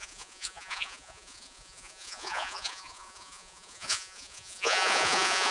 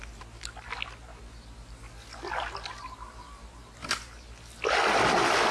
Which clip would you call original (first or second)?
second